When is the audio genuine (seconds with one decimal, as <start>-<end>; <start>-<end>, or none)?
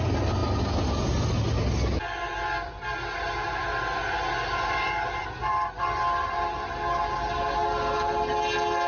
0.0-8.9